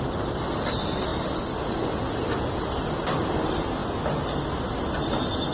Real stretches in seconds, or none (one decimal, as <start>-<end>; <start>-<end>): 0.0-5.5